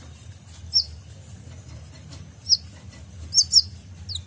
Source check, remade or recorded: recorded